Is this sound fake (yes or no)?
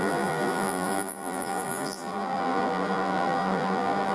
yes